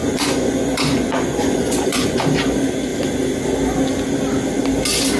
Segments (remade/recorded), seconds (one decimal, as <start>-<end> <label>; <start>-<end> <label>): 0.0-2.2 remade; 2.2-5.2 recorded